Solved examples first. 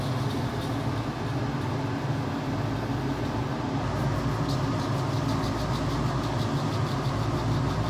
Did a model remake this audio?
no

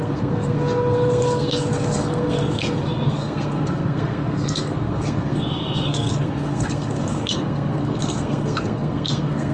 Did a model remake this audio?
yes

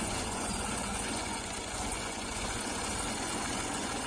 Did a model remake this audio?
yes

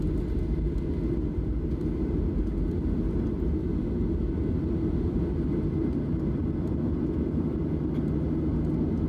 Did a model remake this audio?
no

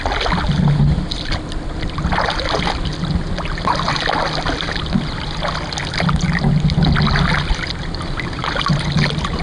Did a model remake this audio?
no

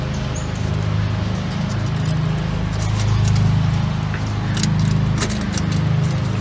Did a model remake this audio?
no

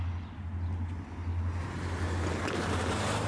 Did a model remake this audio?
no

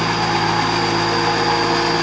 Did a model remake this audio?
no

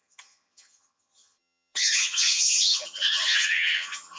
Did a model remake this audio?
yes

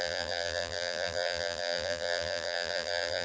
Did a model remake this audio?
yes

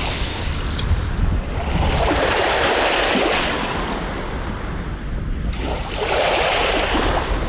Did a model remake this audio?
yes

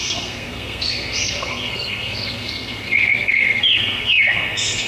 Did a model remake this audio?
yes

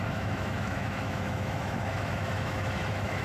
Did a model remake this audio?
yes